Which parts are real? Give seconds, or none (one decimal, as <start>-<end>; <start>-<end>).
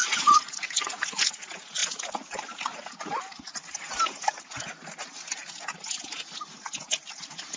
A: 1.3-7.6